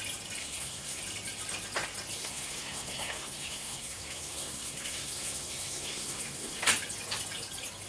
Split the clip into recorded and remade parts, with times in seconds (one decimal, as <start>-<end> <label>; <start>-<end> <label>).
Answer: 0.0-0.4 recorded; 0.4-1.0 remade; 1.0-2.2 recorded; 2.2-6.6 remade; 6.6-7.9 recorded